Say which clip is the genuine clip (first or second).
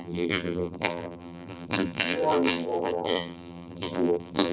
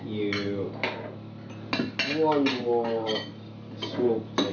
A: second